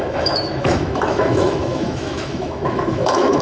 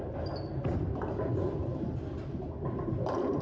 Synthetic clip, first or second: first